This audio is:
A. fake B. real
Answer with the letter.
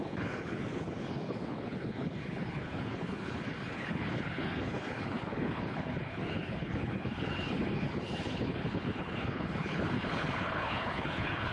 A